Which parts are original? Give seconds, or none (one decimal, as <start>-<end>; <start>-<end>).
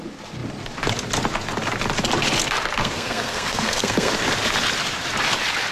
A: 0.0-2.8; 4.1-5.7